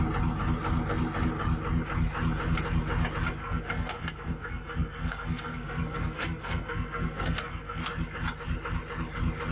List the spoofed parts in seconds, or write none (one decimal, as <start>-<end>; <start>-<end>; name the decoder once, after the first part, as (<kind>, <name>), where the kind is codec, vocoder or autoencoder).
3.4-7.9 (codec, SNAC)